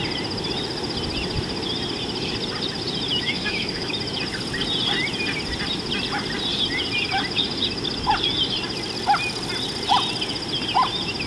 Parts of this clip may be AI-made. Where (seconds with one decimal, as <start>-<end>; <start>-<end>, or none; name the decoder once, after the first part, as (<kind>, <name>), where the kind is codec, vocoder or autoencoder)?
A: 3.1-3.9 (autoencoder, DAC-VAE)